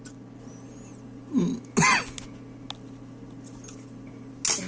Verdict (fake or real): real